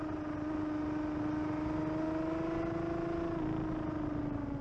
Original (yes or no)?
yes